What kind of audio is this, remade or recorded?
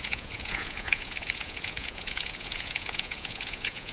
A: remade